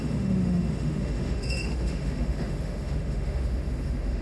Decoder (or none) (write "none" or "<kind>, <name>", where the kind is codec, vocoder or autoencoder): autoencoder, DAC-VAE